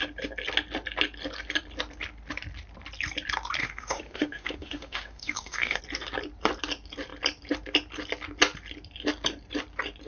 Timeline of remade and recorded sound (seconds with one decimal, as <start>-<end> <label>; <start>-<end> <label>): 0.0-3.6 recorded; 3.6-5.8 remade; 5.8-10.1 recorded